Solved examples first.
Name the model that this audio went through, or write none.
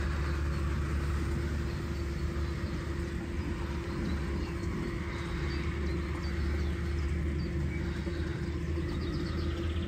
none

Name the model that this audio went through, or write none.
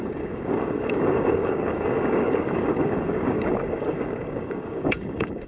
codec, DAC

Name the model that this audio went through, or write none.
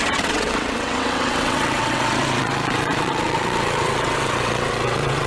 vocoder, WaveNeXt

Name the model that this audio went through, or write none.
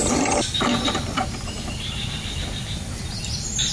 none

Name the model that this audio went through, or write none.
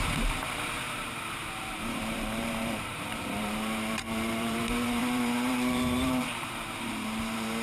vocoder, BigVGAN v2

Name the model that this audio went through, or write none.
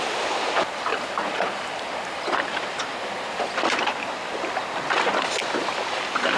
none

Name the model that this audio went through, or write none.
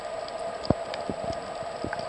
none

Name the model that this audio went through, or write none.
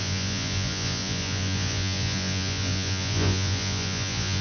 vocoder, Vocos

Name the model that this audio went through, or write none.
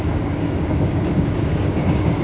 codec, DAC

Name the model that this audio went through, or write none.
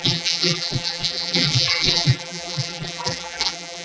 vocoder, BigVGAN v2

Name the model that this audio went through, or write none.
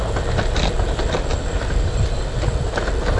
vocoder, BigVGAN v2